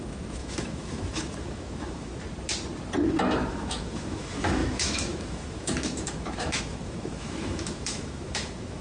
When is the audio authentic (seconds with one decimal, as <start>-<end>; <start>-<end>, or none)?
2.1-3.5